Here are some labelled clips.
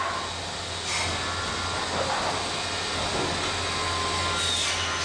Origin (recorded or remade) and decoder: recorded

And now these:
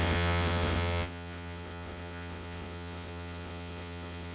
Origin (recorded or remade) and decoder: remade, vocoder, WaveNeXt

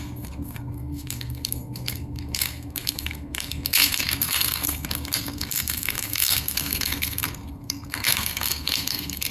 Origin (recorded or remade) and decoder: remade, codec, SNAC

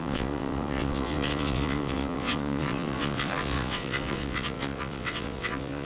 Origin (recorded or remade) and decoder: remade, vocoder, WaveNeXt